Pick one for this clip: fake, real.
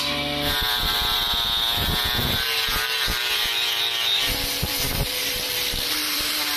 fake